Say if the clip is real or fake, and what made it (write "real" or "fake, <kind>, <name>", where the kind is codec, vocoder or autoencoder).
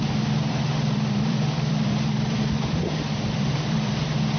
fake, vocoder, BigVGAN v2